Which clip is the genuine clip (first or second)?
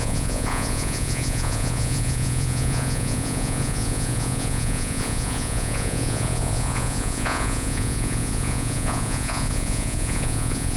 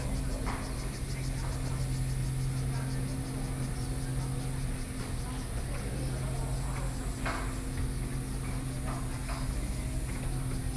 second